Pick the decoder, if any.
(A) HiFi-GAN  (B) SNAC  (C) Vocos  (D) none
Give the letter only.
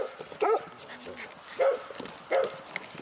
D